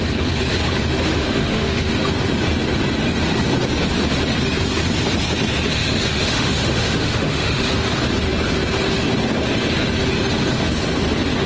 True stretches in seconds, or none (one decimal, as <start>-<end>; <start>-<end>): 0.0-1.1; 1.9-5.8; 7.6-11.5